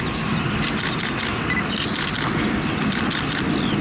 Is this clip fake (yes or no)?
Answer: no